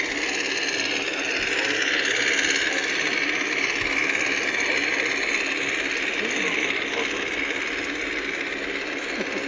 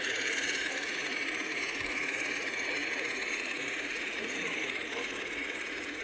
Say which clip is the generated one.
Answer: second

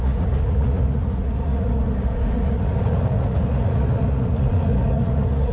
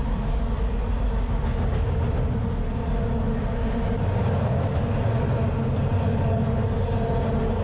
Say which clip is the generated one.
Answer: first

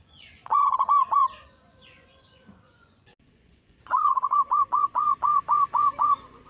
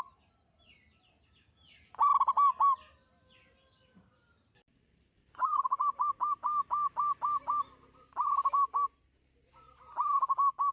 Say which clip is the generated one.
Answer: first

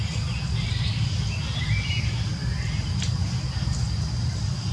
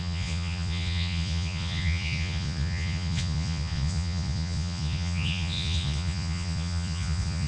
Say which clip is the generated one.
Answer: second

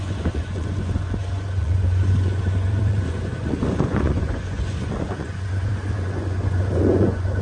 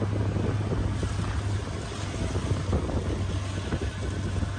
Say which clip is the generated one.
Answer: first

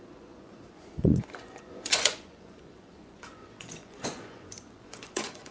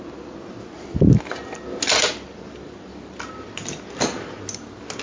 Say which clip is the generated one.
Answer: first